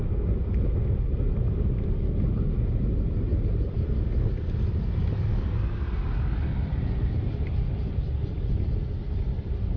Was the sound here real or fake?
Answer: real